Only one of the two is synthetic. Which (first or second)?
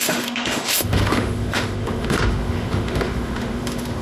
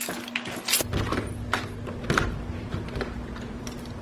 first